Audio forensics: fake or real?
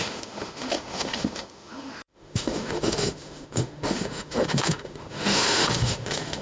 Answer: fake